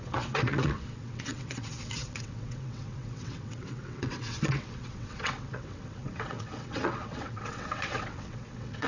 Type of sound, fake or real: fake